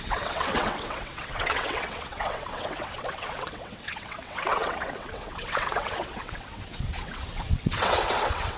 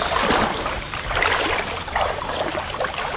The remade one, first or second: first